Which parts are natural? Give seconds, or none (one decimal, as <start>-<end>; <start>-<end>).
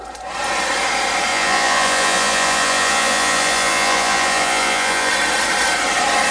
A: 0.0-1.3; 5.1-6.3